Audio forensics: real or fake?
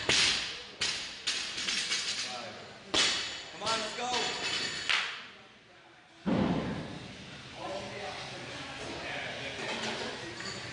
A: real